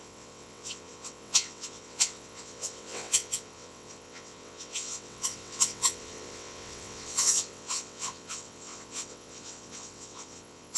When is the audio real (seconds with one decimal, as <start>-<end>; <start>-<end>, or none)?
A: none